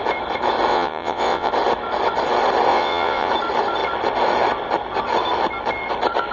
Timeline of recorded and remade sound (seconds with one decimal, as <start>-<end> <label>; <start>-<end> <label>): 0.0-0.7 recorded; 0.7-1.5 remade; 1.5-2.7 recorded; 2.7-3.3 remade; 3.3-6.3 recorded